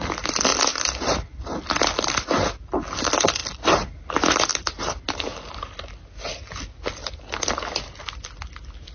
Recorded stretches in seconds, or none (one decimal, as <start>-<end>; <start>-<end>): 0.0-8.9